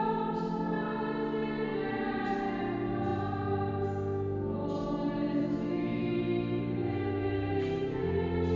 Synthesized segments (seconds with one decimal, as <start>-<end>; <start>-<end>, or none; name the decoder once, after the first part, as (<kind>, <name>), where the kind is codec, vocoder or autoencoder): 5.4-8.0 (autoencoder, DAC-VAE)